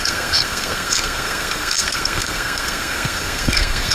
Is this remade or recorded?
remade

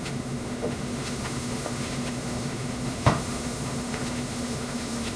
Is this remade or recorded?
remade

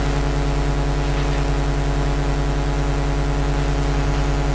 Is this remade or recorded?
recorded